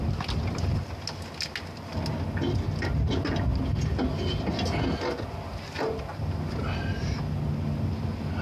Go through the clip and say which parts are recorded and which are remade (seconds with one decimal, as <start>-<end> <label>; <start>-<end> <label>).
0.0-8.4 recorded